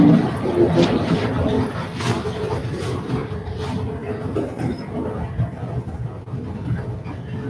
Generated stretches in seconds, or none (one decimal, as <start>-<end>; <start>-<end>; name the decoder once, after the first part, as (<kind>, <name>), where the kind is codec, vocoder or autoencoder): 3.2-4.8 (vocoder, BigVGAN v2)